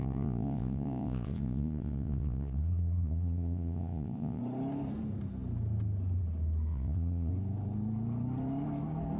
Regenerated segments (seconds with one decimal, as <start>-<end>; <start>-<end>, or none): 0.0-4.4; 6.7-7.3